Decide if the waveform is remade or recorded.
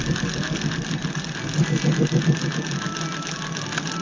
recorded